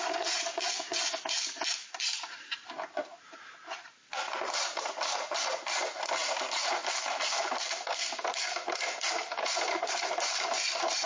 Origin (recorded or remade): remade